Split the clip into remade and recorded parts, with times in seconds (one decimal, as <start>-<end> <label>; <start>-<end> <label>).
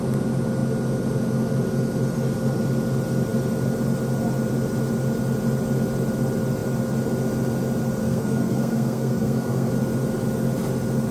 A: 0.0-8.0 recorded; 8.0-9.7 remade; 9.7-11.1 recorded